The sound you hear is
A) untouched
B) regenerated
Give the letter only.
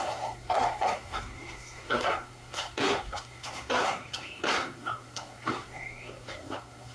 B